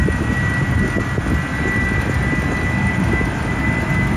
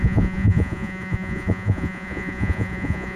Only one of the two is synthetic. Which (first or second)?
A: second